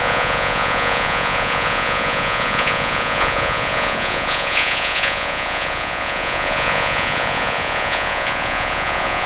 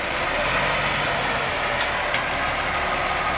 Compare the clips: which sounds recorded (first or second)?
second